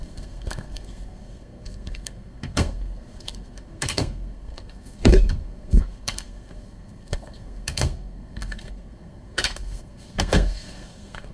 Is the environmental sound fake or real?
fake